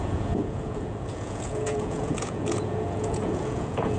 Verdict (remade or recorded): remade